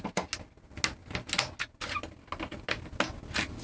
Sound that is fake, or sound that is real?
real